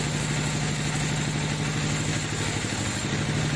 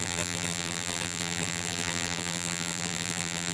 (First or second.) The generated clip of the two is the second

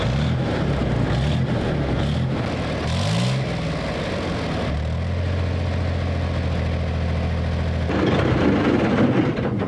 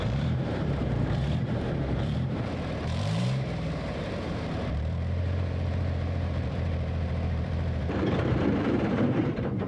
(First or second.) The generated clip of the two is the second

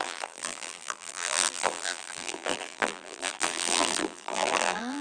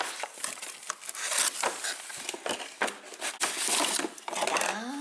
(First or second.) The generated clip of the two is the first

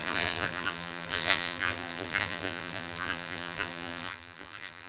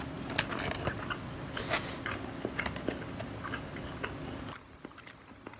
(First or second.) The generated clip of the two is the first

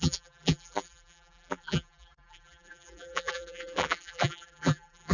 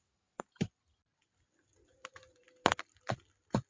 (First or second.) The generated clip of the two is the first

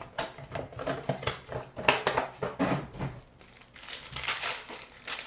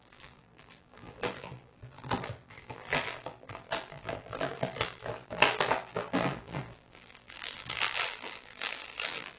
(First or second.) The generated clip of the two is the second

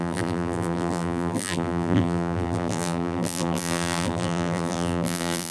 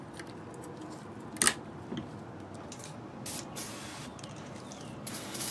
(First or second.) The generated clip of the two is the first